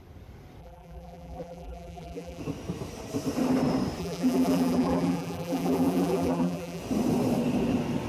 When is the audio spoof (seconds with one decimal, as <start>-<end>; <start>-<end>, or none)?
0.6-2.4; 4.0-6.8